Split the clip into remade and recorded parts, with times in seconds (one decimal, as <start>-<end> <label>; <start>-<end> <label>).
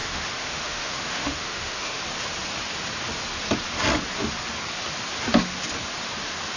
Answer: 0.0-2.0 remade; 2.0-6.6 recorded